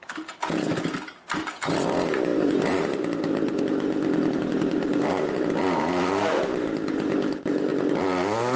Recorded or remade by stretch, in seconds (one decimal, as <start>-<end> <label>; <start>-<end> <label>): 0.0-2.3 recorded; 2.3-3.6 remade; 3.6-4.4 recorded; 4.4-5.5 remade; 5.5-8.6 recorded